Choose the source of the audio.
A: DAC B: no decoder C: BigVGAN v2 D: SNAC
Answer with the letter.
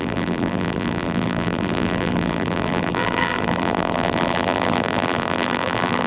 C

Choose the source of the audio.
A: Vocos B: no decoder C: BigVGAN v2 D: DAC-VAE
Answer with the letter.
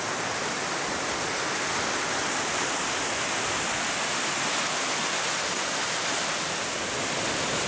B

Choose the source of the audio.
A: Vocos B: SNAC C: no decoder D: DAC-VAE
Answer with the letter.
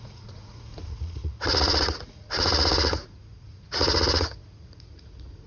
A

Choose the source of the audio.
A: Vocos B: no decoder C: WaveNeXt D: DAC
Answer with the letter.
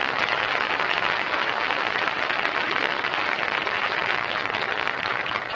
C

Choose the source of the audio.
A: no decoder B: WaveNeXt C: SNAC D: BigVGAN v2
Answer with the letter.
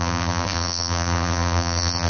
D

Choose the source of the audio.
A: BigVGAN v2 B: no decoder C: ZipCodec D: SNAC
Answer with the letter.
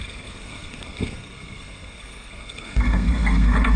D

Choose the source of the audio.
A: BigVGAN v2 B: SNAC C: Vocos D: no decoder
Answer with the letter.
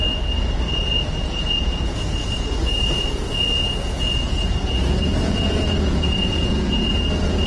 C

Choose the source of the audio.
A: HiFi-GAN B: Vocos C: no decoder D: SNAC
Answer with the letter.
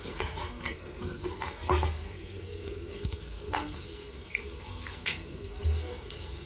D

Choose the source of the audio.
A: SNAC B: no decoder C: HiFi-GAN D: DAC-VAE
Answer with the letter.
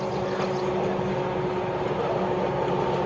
B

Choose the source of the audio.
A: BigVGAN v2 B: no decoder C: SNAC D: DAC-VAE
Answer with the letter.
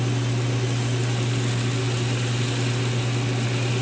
B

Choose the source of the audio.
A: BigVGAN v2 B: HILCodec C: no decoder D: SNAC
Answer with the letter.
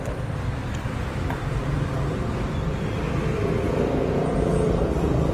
A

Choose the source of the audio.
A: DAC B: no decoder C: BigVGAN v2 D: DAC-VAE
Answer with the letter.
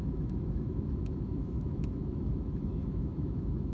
D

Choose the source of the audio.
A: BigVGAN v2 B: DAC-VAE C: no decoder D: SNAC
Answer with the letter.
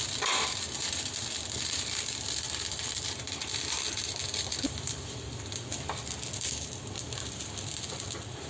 A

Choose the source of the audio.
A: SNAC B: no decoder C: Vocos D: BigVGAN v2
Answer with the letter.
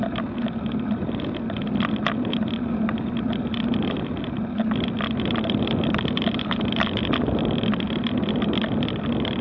B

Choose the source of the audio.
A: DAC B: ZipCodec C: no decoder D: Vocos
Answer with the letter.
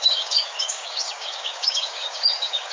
A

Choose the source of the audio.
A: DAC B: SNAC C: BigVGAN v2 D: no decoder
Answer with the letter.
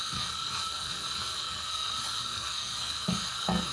B